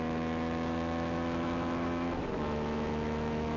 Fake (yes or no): yes